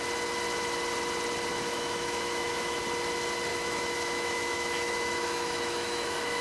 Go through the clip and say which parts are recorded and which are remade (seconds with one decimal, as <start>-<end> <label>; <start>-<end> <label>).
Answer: 0.0-1.5 recorded; 1.5-2.8 remade; 2.8-3.5 recorded; 3.5-6.4 remade